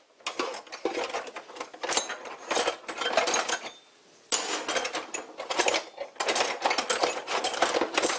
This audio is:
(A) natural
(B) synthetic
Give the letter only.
A